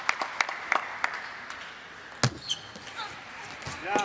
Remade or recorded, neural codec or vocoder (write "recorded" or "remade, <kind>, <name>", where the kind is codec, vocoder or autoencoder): recorded